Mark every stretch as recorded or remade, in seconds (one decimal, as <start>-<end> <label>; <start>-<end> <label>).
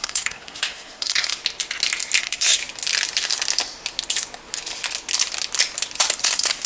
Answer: 0.0-1.4 remade; 1.4-2.2 recorded; 2.2-2.6 remade; 2.6-6.2 recorded; 6.2-6.7 remade